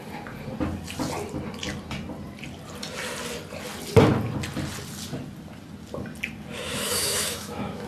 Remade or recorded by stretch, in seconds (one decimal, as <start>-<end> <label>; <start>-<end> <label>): 0.0-6.7 recorded; 6.7-7.9 remade